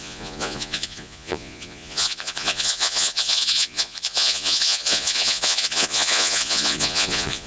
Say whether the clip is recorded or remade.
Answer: remade